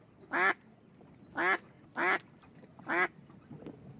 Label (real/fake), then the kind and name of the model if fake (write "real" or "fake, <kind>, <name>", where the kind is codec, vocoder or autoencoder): real